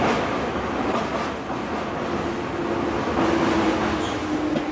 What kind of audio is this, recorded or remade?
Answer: recorded